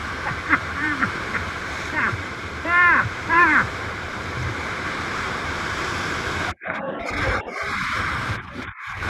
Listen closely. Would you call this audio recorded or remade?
remade